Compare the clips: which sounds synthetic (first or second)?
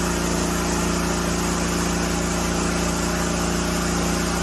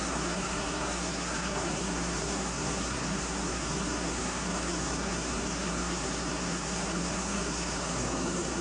second